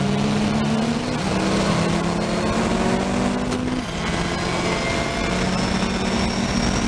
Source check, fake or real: real